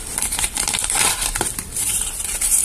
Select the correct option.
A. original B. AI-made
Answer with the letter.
B